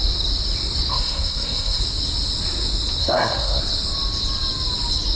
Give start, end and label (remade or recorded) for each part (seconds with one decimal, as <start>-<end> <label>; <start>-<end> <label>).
0.0-0.9 recorded; 0.9-1.8 remade; 1.8-3.0 recorded; 3.0-3.6 remade; 3.6-5.2 recorded